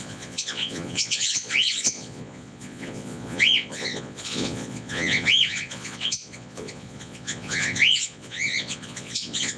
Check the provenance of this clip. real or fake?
fake